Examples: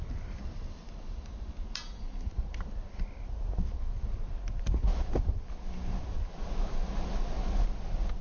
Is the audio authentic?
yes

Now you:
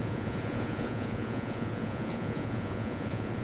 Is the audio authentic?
no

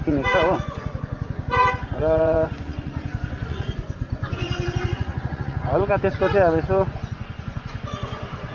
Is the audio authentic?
no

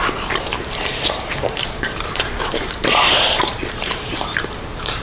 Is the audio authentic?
no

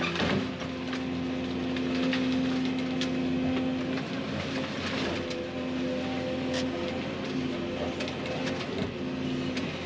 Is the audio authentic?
yes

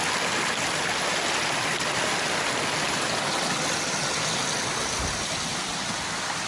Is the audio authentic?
yes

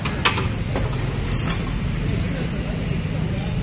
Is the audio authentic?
yes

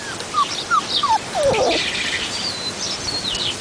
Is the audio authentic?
no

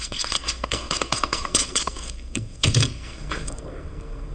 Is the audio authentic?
no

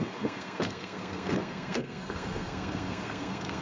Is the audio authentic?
no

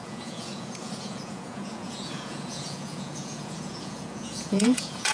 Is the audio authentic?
no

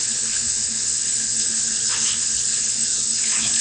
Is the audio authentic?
no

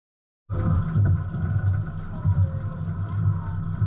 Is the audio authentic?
yes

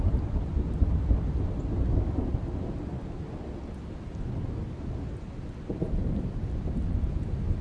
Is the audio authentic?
yes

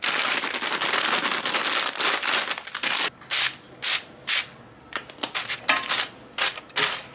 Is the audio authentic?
yes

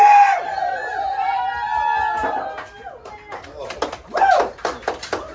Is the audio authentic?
yes